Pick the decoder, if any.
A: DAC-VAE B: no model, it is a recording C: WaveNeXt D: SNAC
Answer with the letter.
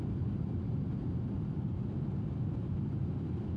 B